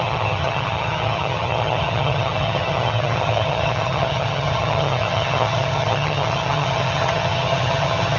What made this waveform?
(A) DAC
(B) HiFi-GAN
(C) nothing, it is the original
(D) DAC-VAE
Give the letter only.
B